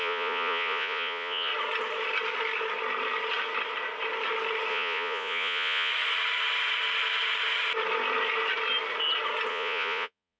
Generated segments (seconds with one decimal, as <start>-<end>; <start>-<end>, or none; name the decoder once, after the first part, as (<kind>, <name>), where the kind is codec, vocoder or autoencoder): 0.0-1.5 (vocoder, Vocos); 4.7-5.9; 9.5-10.4